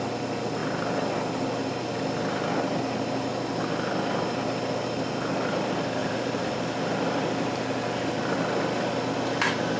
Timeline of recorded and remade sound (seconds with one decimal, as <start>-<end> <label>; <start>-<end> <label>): 0.0-6.0 recorded; 6.0-6.5 remade; 6.5-9.8 recorded